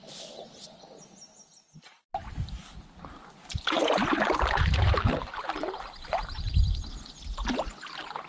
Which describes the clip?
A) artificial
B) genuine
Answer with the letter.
B